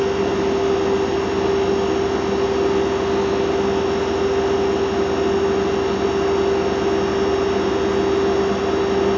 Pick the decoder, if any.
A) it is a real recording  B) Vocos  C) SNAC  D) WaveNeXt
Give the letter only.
A